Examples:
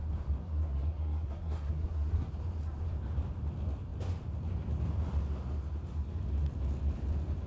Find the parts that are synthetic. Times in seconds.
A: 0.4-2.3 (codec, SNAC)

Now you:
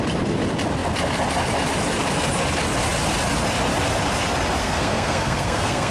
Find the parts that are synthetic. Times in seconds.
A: 4.6-5.9 (codec, SNAC)